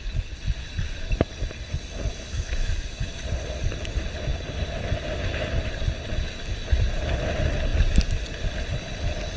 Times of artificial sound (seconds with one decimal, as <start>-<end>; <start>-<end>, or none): 2.1-3.1